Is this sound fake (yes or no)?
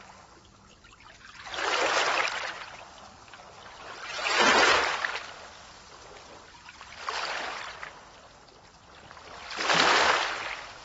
no